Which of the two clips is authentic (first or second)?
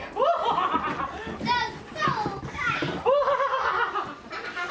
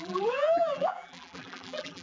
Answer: first